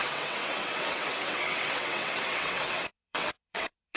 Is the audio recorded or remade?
remade